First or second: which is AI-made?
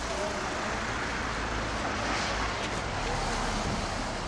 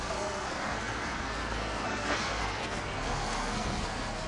second